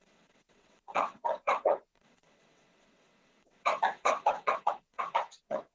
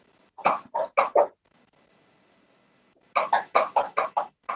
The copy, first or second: first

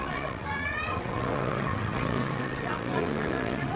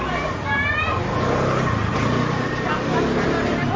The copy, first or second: first